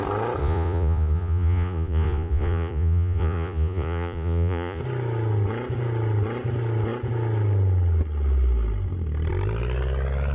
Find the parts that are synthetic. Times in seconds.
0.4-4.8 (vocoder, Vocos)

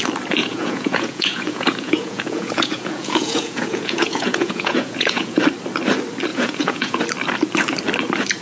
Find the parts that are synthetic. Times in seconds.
0.4-5.4 (vocoder, Vocos); 6.3-7.0